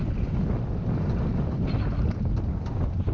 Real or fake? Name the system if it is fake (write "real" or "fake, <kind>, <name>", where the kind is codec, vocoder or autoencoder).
real